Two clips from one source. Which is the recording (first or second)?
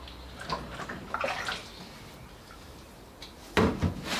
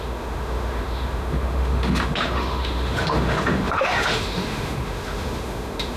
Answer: first